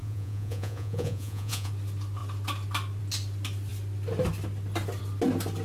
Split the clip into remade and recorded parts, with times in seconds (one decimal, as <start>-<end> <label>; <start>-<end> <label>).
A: 0.0-1.7 remade; 1.7-5.6 recorded